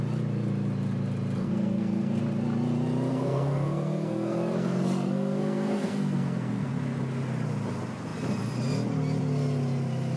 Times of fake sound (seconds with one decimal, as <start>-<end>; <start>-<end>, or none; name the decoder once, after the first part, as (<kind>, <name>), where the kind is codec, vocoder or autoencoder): 1.4-2.2 (codec, SNAC); 3.1-6.7